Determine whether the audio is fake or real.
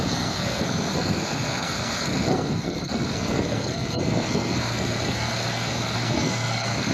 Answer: fake